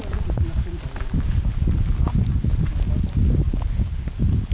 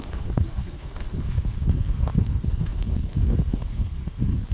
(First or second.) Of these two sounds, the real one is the first